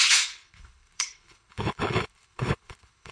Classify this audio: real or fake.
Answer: fake